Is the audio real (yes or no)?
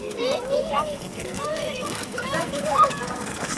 no